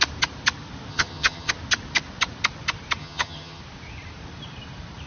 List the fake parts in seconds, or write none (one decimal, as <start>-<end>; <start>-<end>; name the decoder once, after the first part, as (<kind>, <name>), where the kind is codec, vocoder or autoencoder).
0.9-1.5 (vocoder, HiFi-GAN); 3.0-3.6